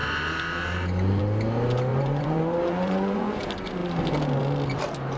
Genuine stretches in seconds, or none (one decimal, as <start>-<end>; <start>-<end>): 0.0-1.9; 3.3-5.2